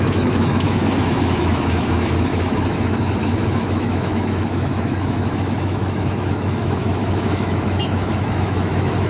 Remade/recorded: remade